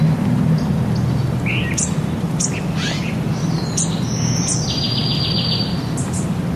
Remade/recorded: recorded